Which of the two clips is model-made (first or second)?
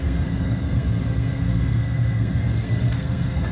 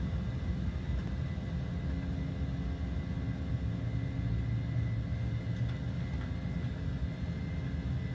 first